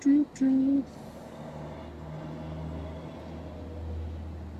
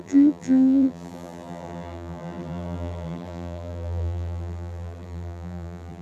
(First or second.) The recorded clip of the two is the first